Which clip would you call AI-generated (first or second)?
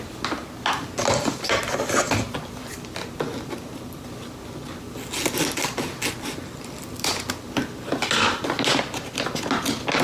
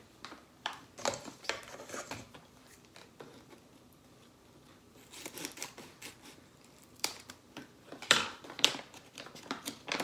second